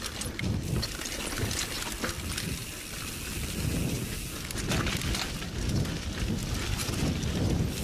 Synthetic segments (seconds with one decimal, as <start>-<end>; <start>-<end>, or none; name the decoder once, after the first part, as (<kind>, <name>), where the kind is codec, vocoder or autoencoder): none